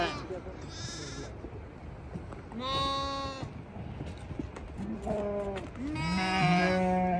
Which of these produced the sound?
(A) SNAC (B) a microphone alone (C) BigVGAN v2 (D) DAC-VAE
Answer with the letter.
B